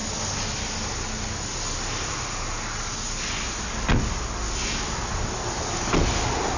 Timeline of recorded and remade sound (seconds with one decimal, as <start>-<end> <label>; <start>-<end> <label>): 0.0-6.6 recorded